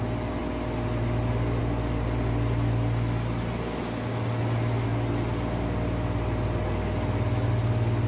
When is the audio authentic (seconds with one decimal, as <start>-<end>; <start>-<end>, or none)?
0.0-8.1